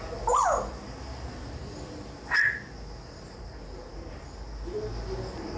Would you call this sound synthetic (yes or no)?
no